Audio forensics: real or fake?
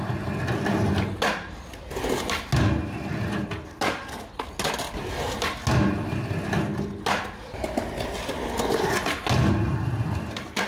real